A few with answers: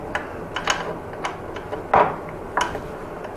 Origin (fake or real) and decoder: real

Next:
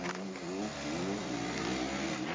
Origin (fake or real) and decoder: real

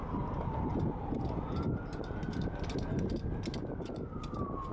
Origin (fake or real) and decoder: real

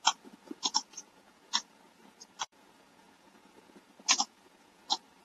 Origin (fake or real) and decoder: fake, vocoder, Vocos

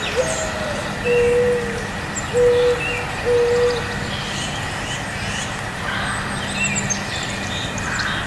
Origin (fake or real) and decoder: real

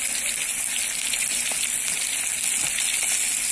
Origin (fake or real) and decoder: real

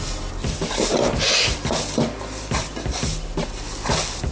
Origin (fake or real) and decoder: real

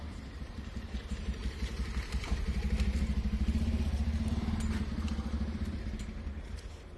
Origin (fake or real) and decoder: fake, vocoder, BigVGAN v2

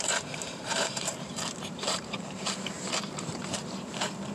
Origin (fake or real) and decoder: fake, vocoder, BigVGAN v2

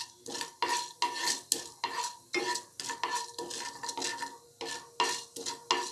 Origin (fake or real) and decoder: real